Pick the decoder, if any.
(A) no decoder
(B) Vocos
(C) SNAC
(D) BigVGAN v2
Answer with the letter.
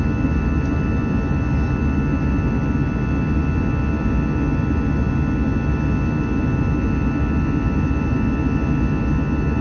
A